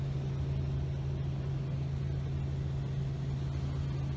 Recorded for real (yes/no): yes